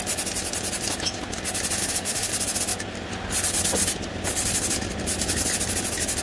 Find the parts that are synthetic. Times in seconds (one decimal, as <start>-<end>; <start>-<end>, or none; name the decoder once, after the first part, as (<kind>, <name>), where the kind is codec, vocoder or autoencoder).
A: 1.8-2.3 (autoencoder, DAC-VAE)